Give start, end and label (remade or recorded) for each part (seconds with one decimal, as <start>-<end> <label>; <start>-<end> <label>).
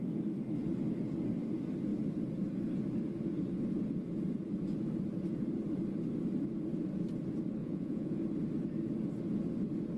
0.0-7.6 recorded; 7.6-8.2 remade; 8.2-10.0 recorded